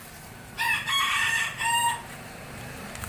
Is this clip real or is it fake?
fake